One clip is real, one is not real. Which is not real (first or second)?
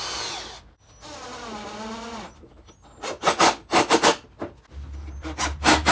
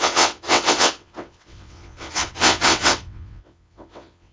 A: second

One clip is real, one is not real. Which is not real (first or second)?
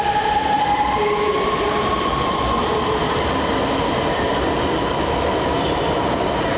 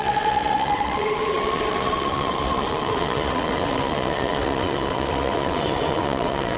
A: second